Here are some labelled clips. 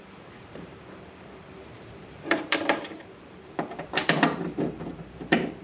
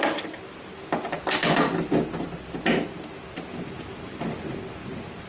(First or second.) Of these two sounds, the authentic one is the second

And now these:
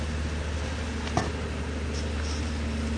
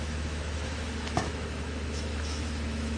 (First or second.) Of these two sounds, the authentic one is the first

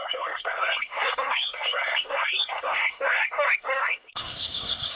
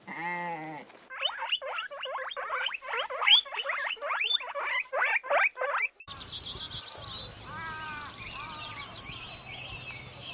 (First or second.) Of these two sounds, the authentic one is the second